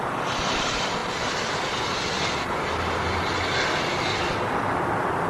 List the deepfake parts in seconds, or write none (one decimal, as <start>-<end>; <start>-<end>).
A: 0.0-1.0; 4.2-5.3